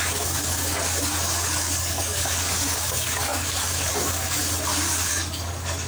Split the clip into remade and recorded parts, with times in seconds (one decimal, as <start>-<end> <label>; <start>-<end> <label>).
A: 0.0-4.4 remade; 4.4-5.1 recorded; 5.1-5.9 remade